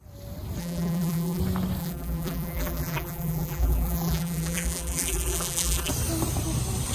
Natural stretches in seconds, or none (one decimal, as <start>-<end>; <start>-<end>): 0.0-0.6; 1.4-1.8; 5.9-6.9